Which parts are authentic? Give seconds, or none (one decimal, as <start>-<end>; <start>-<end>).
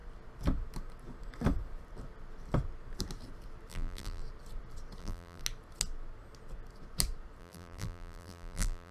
0.0-3.7; 4.2-5.0; 5.4-7.4